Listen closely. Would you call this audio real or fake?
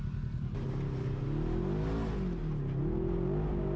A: real